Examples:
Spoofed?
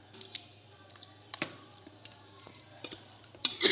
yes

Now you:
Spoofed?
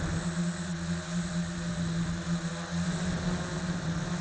no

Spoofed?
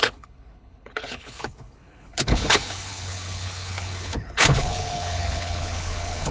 yes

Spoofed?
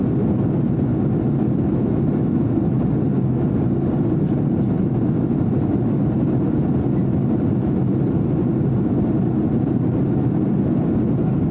no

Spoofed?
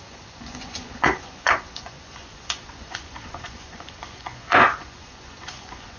yes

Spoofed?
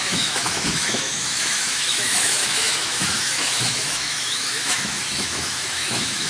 yes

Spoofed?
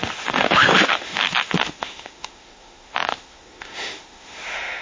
yes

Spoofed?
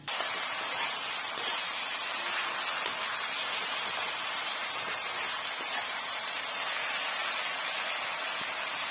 no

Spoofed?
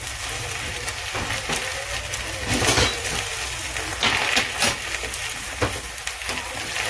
no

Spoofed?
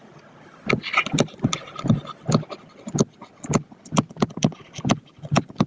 no